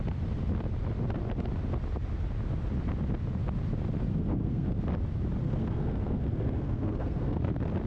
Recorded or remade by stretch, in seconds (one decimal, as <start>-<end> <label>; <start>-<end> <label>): 0.0-4.1 recorded; 4.1-4.8 remade; 4.8-5.4 recorded; 5.4-7.5 remade; 7.5-7.9 recorded